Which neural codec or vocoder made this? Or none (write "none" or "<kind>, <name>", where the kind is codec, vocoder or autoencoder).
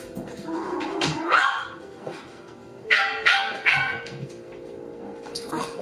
codec, SNAC